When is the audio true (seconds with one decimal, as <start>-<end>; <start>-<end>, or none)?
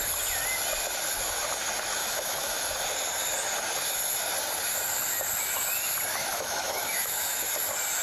0.0-2.0; 2.6-6.3; 7.4-8.0